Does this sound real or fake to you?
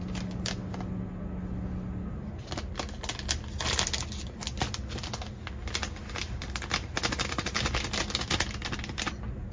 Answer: real